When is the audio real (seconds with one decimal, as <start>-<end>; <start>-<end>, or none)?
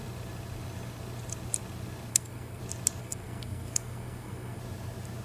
0.0-2.1; 2.6-3.0; 4.6-5.2